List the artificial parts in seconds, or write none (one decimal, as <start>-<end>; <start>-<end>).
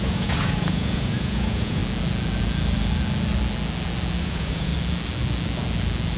0.0-1.8; 4.2-4.7